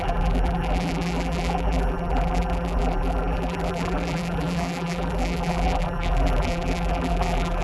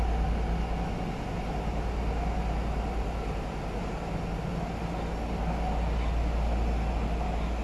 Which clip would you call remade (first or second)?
first